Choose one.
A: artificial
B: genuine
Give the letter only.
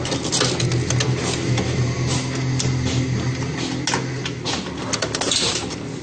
B